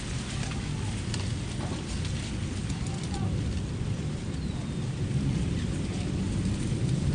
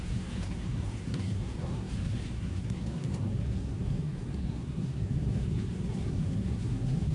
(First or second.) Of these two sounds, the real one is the first